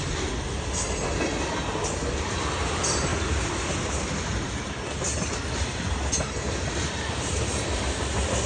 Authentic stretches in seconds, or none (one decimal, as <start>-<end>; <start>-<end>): 0.0-3.1; 4.8-8.5